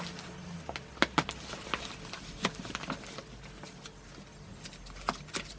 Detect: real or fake real